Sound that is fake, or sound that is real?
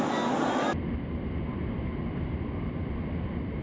real